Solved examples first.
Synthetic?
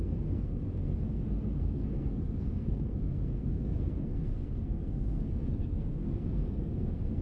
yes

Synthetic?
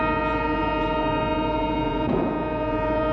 yes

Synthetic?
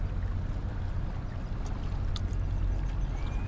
no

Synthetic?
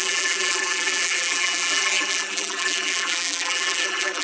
yes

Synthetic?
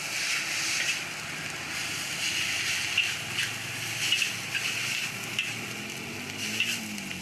no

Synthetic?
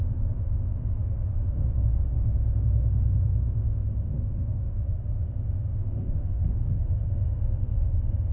yes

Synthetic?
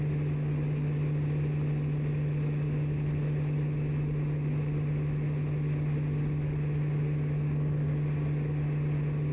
no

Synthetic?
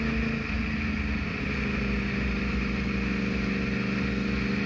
no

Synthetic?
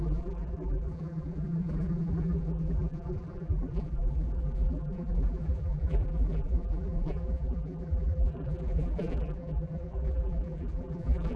yes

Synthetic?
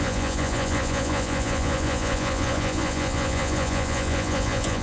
yes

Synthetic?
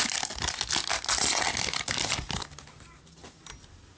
no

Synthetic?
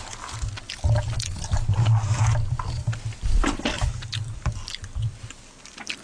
no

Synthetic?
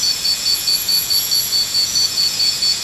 yes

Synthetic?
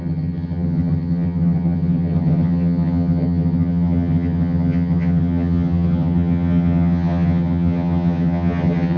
yes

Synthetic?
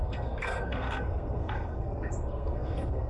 yes